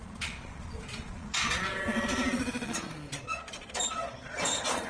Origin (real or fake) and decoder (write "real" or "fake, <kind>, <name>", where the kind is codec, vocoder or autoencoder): fake, vocoder, Vocos